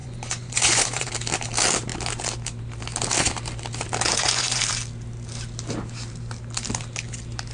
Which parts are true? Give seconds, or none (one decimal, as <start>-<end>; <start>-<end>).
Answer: 1.1-4.1; 4.6-7.5